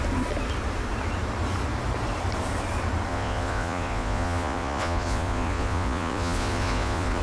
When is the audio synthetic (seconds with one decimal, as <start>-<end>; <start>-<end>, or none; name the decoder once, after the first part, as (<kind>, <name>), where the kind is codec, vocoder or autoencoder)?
3.1-7.2 (vocoder, Vocos)